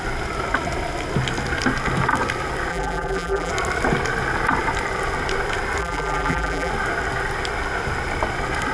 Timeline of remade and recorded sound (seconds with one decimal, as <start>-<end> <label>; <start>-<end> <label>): 0.0-2.7 recorded; 2.7-3.5 remade; 3.5-5.8 recorded; 5.8-6.7 remade; 6.7-8.7 recorded